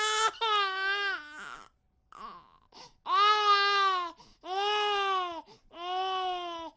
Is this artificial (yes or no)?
no